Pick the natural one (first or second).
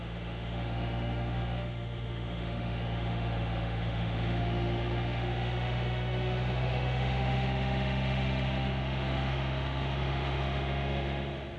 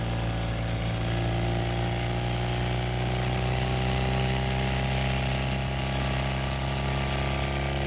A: second